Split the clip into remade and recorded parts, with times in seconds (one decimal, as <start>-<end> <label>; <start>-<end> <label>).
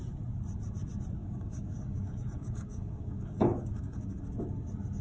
0.0-1.2 recorded; 1.2-4.2 remade; 4.2-5.0 recorded